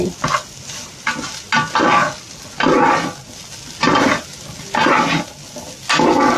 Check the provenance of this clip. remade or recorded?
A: recorded